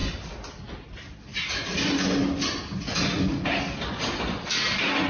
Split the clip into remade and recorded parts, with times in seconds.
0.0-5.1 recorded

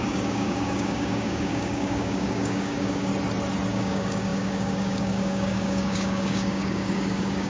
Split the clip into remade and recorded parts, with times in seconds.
0.0-3.1 remade; 3.1-3.7 recorded; 3.7-7.5 remade

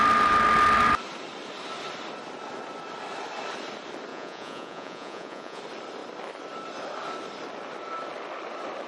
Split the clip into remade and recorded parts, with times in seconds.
0.0-4.1 recorded; 4.1-5.6 remade; 5.6-8.9 recorded

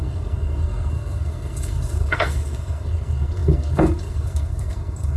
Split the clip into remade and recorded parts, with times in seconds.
0.0-5.2 remade

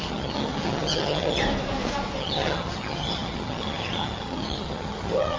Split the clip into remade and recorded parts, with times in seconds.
0.0-1.4 remade; 1.4-2.2 recorded; 2.2-5.4 remade

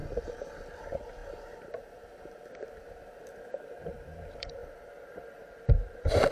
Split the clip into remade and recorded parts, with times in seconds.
0.0-4.6 remade; 4.6-5.6 recorded; 5.6-6.3 remade

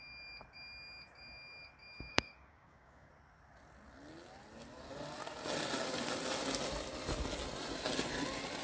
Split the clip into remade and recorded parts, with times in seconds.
0.0-2.1 recorded; 2.1-3.1 remade; 3.1-8.6 recorded